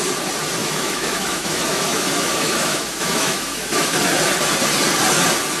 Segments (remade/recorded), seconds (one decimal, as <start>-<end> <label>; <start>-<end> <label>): 0.0-0.6 recorded; 0.6-4.0 remade; 4.0-5.6 recorded